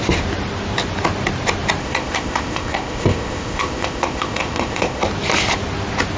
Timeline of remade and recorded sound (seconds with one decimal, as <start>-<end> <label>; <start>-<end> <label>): 0.0-1.8 recorded; 1.8-5.0 remade; 5.0-6.2 recorded